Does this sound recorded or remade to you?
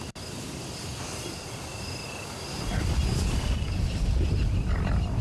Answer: recorded